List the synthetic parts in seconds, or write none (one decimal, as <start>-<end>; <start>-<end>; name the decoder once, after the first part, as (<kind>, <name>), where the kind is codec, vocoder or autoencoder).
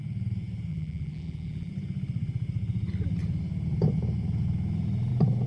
0.7-1.7 (vocoder, BigVGAN v2)